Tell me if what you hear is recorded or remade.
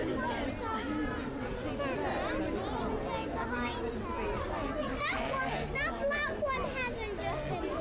recorded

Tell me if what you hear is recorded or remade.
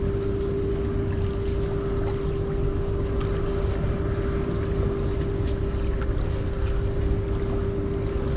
recorded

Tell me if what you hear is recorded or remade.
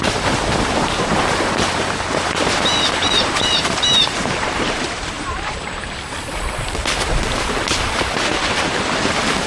remade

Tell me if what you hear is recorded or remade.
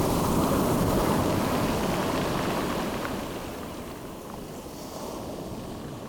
recorded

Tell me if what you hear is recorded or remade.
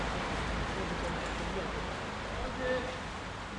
recorded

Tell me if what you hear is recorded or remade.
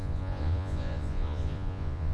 remade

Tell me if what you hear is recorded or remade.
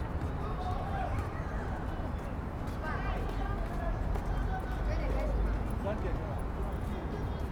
recorded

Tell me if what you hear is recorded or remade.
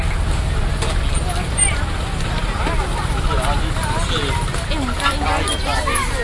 recorded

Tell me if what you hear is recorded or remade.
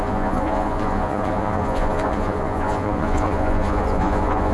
remade